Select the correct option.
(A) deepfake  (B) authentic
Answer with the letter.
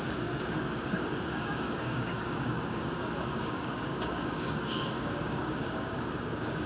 A